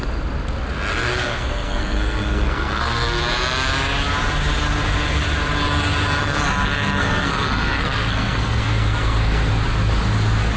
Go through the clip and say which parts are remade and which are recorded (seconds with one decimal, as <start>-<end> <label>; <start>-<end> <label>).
0.0-0.9 recorded; 0.9-3.2 remade; 3.2-6.2 recorded; 6.2-9.5 remade; 9.5-10.6 recorded